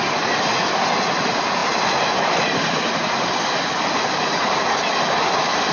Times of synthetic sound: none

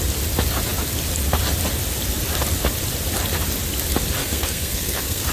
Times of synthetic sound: 4.2-5.3

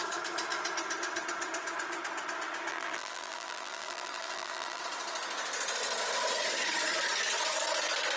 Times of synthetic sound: 2.7-4.8

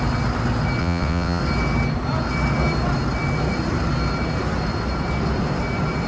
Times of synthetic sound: 0.8-1.4